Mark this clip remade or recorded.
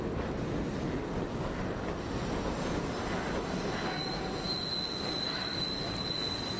recorded